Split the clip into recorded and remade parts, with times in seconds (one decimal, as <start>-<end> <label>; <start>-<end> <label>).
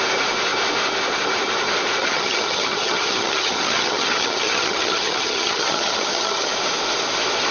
0.0-2.0 recorded; 2.0-6.5 remade; 6.5-7.5 recorded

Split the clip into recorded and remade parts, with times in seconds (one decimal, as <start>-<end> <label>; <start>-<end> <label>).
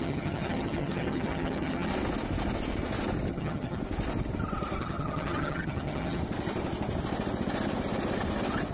0.0-1.9 remade; 1.9-3.3 recorded; 3.3-3.8 remade; 3.8-4.8 recorded; 4.8-6.2 remade; 6.2-8.7 recorded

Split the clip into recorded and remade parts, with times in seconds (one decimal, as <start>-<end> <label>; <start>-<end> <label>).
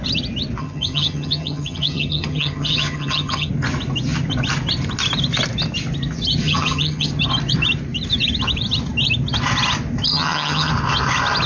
0.0-0.6 recorded; 0.6-3.5 remade; 3.5-6.4 recorded; 6.4-7.1 remade; 7.1-10.1 recorded; 10.1-10.7 remade; 10.7-11.5 recorded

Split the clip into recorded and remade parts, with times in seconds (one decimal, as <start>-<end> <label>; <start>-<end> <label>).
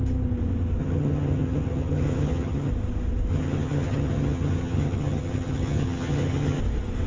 0.0-0.8 recorded; 0.8-2.7 remade; 2.7-3.3 recorded; 3.3-6.6 remade; 6.6-7.1 recorded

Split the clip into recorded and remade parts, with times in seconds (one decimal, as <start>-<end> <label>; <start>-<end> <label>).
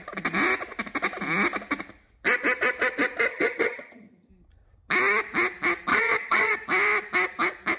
0.0-3.3 recorded; 3.3-4.3 remade; 4.3-5.9 recorded; 5.9-6.5 remade; 6.5-7.8 recorded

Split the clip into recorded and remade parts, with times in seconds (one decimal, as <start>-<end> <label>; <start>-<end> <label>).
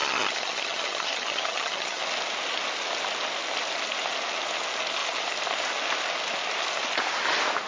0.0-2.0 remade; 2.0-7.7 recorded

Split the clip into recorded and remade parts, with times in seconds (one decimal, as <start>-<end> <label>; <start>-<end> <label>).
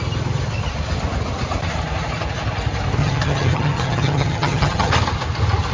0.0-3.0 recorded; 3.0-4.9 remade; 4.9-5.7 recorded